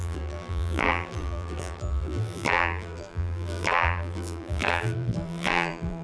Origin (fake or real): fake